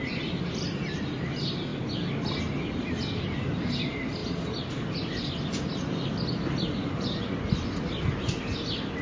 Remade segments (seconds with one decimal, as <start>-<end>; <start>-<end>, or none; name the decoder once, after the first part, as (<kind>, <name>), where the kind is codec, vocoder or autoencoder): none